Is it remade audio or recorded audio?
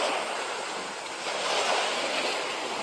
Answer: recorded